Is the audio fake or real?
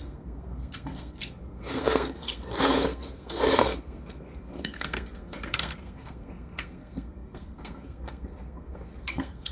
fake